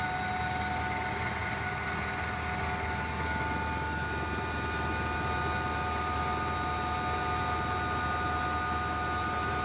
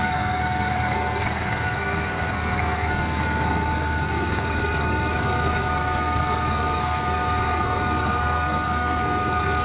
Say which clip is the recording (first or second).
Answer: first